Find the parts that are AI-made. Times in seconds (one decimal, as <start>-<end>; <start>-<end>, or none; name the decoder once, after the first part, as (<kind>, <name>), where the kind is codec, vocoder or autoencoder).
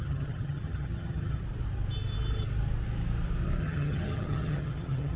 0.0-1.4 (vocoder, HiFi-GAN); 3.6-5.2